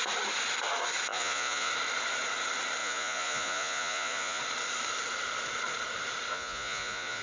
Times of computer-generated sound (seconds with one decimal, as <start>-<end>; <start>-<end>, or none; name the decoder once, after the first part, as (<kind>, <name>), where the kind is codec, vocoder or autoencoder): 1.1-1.7 (vocoder, Vocos); 2.8-4.4; 6.3-7.2